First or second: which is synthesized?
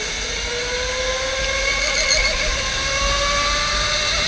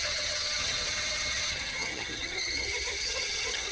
second